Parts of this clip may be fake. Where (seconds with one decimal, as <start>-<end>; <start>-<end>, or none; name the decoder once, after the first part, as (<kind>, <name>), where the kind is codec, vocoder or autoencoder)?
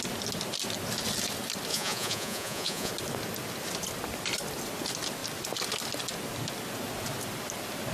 1.7-2.9 (vocoder, Vocos)